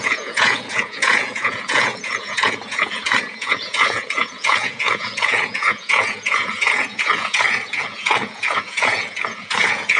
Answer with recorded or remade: remade